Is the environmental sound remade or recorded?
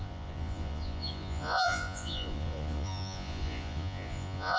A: remade